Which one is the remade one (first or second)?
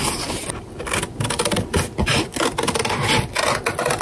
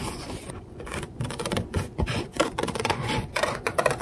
second